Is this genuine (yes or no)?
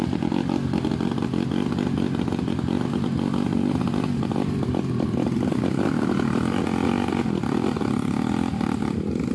yes